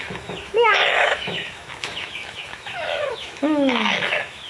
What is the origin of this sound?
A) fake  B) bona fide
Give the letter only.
A